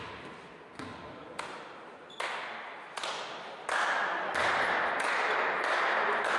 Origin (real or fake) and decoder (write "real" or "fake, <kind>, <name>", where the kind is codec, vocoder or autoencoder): real